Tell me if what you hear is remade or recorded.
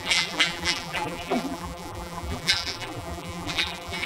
remade